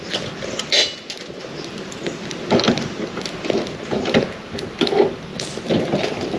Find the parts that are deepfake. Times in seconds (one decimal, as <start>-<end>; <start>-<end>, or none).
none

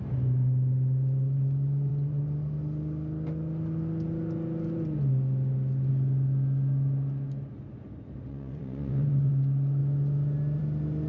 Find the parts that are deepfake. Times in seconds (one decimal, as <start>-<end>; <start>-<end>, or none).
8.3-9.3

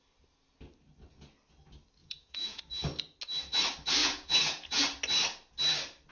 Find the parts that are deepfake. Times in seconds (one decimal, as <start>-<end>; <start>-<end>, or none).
2.0-2.6; 4.0-4.8

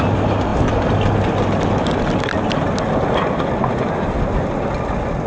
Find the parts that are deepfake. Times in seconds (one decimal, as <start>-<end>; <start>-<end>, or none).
none

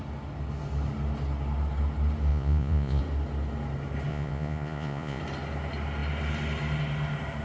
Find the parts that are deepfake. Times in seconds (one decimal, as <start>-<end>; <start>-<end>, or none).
2.3-3.0; 4.1-5.2